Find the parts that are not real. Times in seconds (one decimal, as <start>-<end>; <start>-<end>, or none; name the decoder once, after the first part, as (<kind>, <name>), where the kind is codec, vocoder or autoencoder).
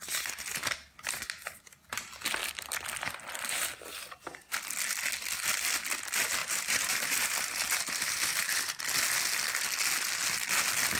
6.4-8.8 (vocoder, BigVGAN v2)